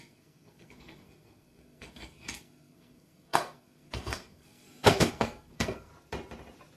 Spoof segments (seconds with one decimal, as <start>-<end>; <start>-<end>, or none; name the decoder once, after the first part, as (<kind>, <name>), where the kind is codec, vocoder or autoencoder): 0.0-5.9 (codec, SNAC)